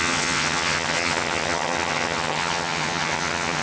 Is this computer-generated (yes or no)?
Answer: yes